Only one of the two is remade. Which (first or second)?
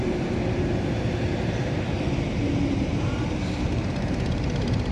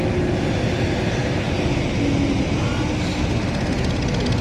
first